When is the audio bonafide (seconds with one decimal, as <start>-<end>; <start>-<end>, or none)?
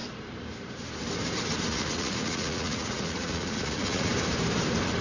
0.0-1.7; 4.1-5.0